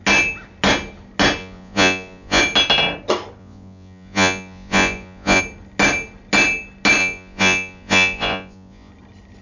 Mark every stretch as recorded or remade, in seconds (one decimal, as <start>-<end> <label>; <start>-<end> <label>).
0.0-1.4 recorded; 1.4-2.4 remade; 2.4-3.4 recorded; 3.4-5.4 remade; 5.4-7.0 recorded; 7.0-8.9 remade; 8.9-9.4 recorded